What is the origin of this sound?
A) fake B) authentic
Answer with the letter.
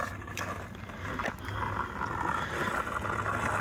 B